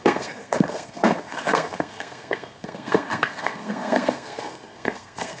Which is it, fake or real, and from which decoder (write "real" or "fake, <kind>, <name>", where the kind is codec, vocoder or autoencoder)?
fake, codec, SNAC